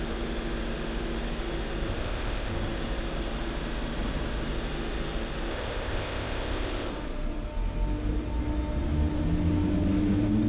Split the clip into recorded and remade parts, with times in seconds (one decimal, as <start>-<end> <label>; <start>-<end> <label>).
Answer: 0.0-2.0 recorded; 2.0-2.5 remade; 2.5-5.5 recorded; 5.5-6.9 remade; 6.9-10.5 recorded